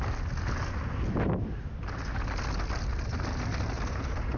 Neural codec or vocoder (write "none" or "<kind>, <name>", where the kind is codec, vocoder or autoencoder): none